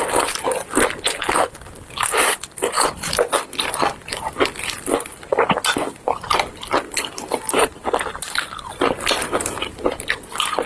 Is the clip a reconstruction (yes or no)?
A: no